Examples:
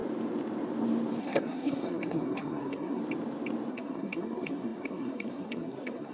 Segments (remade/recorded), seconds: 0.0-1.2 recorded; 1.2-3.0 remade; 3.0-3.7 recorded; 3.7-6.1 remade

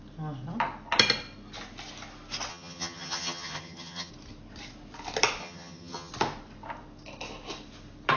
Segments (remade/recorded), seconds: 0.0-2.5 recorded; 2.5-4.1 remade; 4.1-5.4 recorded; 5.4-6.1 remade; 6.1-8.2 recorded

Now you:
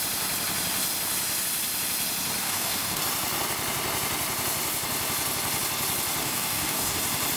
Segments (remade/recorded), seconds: 0.0-2.4 recorded; 2.4-3.0 remade; 3.0-6.2 recorded; 6.2-7.0 remade; 7.0-7.4 recorded